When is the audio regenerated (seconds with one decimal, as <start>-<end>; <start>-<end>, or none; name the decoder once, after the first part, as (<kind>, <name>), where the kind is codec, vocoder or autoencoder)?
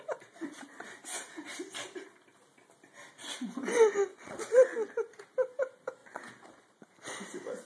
4.1-4.9 (vocoder, Vocos); 6.0-6.8